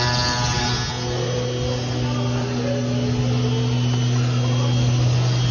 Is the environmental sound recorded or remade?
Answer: recorded